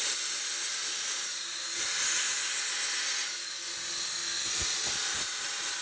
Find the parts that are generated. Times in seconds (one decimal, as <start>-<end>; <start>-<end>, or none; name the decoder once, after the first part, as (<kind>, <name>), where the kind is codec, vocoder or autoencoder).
none